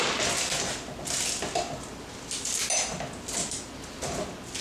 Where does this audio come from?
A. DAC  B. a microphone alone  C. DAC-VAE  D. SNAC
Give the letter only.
B